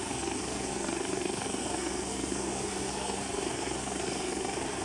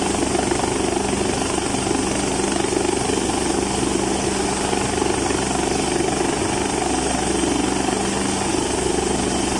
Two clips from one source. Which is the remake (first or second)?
first